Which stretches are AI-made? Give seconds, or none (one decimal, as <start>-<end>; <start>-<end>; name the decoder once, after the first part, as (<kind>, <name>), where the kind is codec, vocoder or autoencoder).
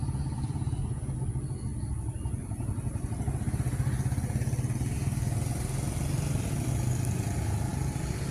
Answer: none